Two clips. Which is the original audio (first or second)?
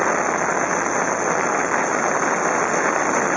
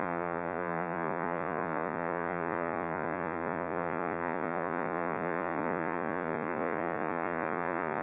first